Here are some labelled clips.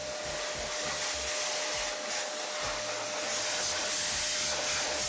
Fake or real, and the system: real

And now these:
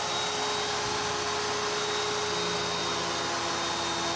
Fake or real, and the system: real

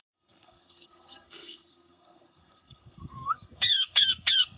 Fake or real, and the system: fake, codec, SNAC